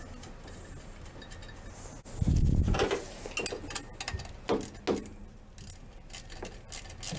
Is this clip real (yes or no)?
yes